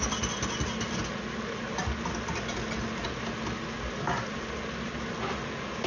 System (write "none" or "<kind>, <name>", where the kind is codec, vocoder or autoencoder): none